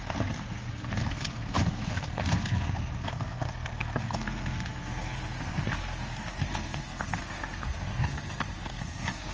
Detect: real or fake fake